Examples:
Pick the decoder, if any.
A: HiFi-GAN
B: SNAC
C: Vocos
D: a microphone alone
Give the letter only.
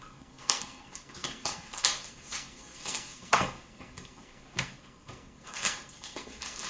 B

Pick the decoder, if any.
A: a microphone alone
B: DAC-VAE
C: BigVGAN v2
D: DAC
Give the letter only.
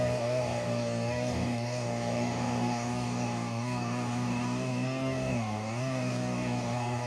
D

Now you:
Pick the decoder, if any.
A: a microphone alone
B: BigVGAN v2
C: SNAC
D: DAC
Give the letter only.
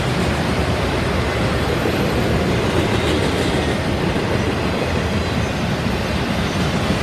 A